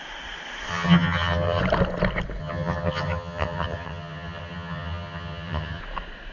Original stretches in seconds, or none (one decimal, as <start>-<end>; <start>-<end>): 0.0-0.7; 1.6-2.4; 5.8-6.3